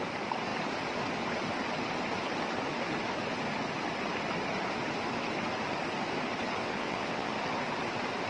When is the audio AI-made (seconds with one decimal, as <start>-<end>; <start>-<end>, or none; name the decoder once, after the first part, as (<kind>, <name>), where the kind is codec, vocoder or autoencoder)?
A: 6.6-7.3 (vocoder, WaveNeXt)